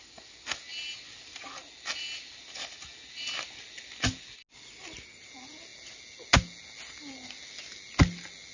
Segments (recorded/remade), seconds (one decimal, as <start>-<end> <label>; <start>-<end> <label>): 0.0-8.5 recorded